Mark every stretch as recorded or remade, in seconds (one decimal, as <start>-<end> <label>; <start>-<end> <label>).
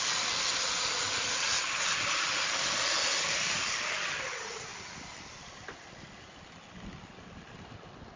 0.0-8.2 recorded